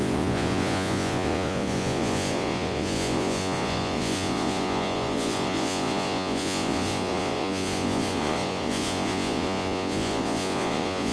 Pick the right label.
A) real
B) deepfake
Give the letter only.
B